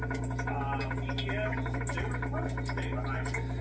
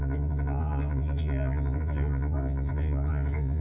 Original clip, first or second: first